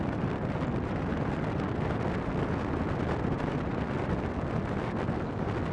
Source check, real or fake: real